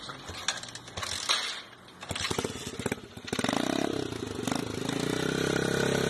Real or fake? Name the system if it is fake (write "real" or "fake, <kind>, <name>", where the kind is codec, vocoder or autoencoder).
real